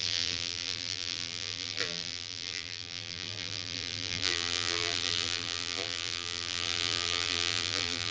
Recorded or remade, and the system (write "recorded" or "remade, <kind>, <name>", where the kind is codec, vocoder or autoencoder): remade, vocoder, BigVGAN v2